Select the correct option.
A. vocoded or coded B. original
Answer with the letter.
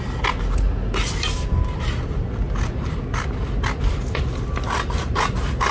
B